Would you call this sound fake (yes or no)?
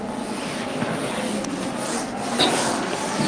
no